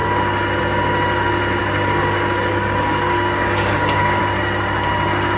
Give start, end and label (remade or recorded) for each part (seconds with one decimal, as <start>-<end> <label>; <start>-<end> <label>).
0.0-1.6 recorded; 1.6-4.2 remade; 4.2-5.4 recorded